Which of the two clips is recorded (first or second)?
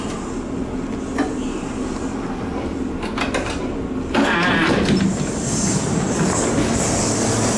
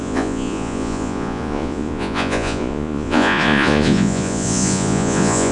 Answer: first